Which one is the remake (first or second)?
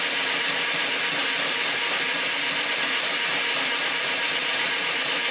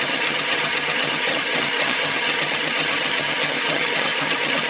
second